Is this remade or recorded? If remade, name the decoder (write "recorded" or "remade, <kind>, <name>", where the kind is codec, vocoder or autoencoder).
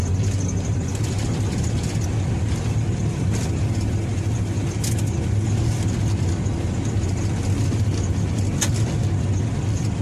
recorded